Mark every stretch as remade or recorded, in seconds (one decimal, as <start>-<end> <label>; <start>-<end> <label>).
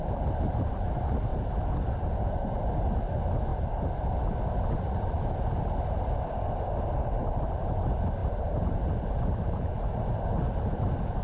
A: 0.0-1.3 recorded; 1.3-2.7 remade; 2.7-3.5 recorded; 3.5-4.3 remade; 4.3-11.2 recorded